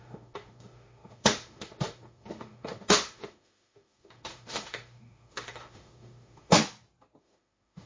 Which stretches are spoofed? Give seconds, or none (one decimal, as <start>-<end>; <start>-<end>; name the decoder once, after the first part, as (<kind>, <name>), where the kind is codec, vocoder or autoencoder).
0.0-6.6 (autoencoder, DAC-VAE); 7.2-7.9